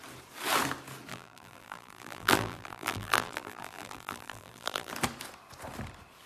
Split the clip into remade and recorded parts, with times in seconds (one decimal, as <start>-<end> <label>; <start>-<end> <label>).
0.0-1.1 recorded; 1.1-4.9 remade; 4.9-6.3 recorded

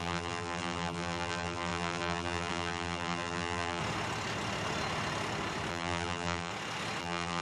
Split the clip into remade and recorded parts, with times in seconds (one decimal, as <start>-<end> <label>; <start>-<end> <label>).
0.0-3.8 remade; 3.8-5.7 recorded; 5.7-6.5 remade; 6.5-7.0 recorded; 7.0-7.4 remade